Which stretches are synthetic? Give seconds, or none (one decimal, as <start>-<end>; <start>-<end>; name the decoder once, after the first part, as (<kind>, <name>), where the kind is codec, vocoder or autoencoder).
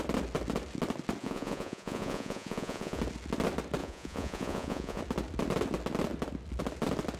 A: 1.2-3.0 (vocoder, Vocos); 3.8-5.0